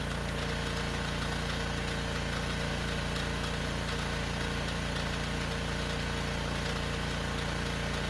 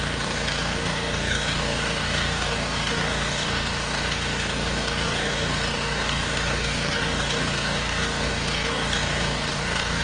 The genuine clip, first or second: first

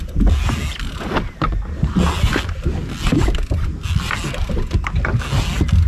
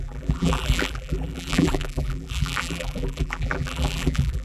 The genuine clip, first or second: first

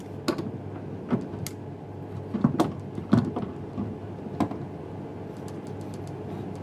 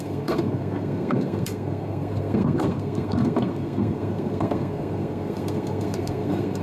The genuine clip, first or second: first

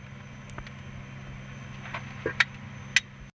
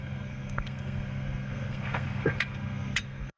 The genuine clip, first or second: first